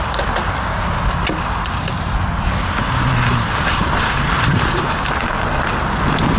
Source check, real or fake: real